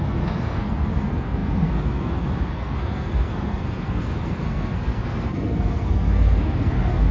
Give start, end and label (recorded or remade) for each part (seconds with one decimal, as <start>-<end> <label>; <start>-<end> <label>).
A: 0.0-7.1 remade